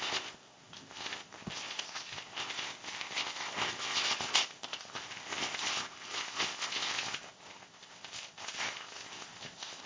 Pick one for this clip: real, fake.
fake